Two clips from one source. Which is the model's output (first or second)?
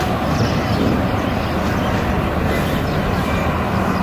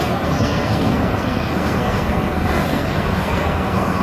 second